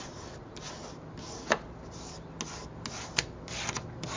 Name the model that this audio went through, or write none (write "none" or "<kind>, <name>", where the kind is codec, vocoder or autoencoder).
none